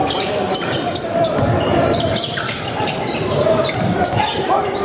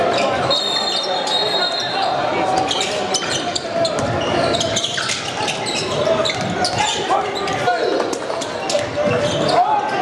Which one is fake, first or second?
first